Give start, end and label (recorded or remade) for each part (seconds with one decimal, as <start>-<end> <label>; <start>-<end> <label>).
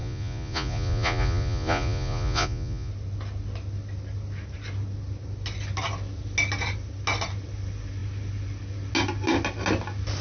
0.0-2.9 remade; 2.9-10.2 recorded